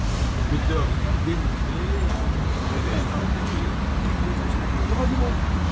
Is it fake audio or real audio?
real